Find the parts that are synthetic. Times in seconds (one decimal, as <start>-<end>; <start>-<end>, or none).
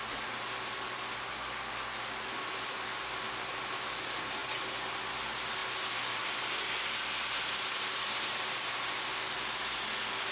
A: none